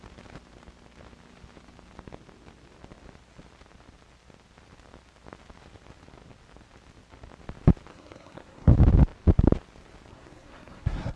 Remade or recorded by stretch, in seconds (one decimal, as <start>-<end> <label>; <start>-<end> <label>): 0.0-7.9 recorded; 7.9-8.7 remade; 8.7-10.1 recorded; 10.1-11.2 remade